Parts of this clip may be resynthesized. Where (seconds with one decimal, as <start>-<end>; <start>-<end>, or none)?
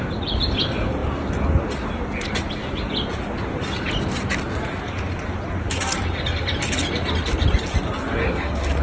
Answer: none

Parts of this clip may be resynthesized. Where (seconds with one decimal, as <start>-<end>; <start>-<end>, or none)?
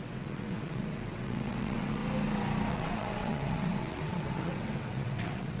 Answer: 0.0-2.0; 2.7-5.6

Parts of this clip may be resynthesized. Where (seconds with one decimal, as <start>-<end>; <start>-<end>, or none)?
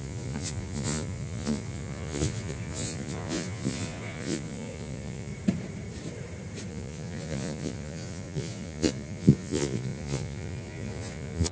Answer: 0.0-5.3; 6.7-11.5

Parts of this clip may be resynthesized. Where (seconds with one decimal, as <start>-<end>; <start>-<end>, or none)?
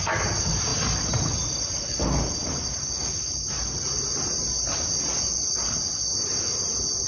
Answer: none